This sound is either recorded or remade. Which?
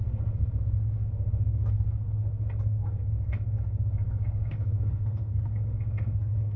remade